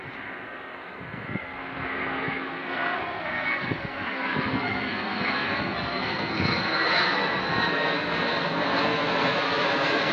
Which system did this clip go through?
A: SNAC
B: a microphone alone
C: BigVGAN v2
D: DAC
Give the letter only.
A